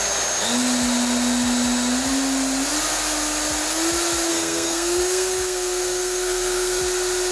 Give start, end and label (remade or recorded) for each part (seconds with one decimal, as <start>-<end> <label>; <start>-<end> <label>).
0.0-4.3 recorded; 4.3-6.8 remade; 6.8-7.3 recorded